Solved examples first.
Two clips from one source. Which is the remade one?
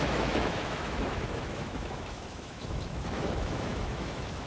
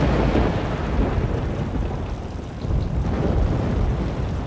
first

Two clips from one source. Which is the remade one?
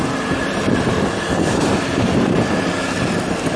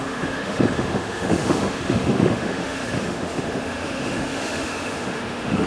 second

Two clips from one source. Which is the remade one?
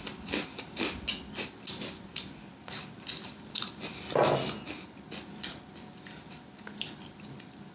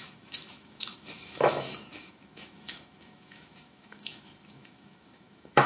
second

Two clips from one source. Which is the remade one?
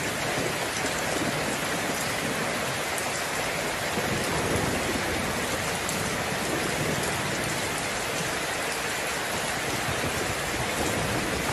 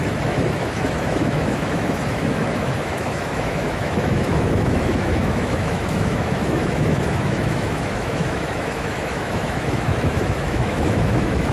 second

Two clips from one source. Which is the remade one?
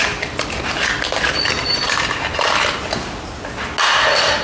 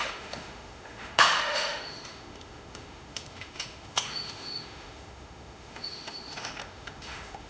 second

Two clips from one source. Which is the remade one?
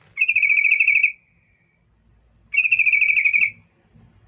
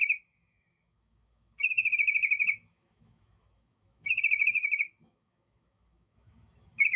second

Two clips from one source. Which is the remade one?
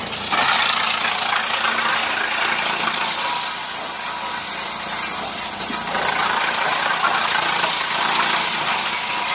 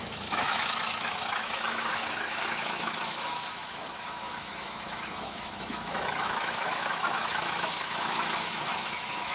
second